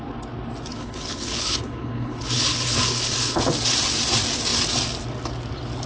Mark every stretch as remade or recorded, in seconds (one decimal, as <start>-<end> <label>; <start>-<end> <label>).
0.0-0.7 recorded; 0.7-3.4 remade; 3.4-5.9 recorded